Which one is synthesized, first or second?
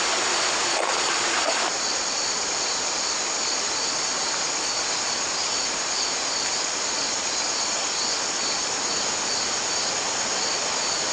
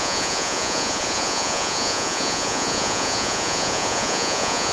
second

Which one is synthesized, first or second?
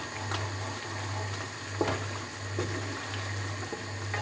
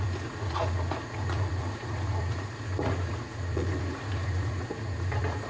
second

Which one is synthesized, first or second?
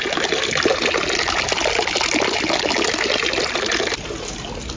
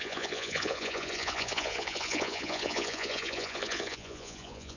second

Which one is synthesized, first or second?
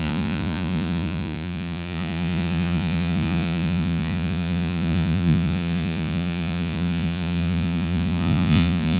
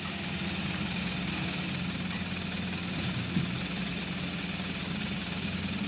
first